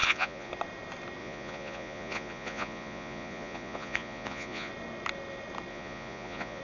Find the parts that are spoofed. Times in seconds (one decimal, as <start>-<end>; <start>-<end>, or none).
0.0-0.5; 1.2-4.7; 5.7-6.6